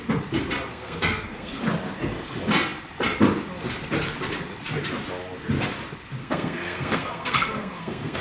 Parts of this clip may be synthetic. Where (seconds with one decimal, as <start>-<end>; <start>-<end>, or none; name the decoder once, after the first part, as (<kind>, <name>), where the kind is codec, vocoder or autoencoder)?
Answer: 0.7-1.6 (codec, SNAC); 6.2-8.2